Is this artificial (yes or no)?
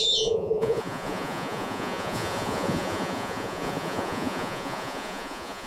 yes